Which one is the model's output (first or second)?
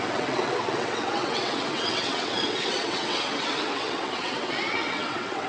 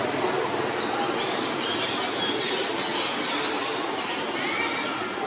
first